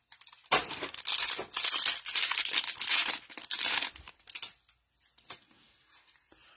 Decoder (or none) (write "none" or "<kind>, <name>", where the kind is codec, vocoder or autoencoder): none